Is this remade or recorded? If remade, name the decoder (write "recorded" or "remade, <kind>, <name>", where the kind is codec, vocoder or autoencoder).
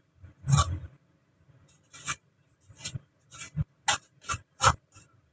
recorded